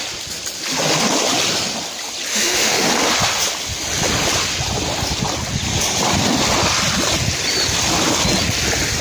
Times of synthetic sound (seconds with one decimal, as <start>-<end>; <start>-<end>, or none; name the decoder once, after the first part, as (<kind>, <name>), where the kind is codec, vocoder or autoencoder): 2.3-2.9 (autoencoder, DAC-VAE)